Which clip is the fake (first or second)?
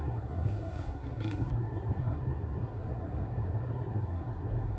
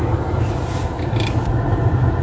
first